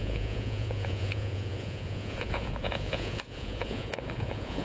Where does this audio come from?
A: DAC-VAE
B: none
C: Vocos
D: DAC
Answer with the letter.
C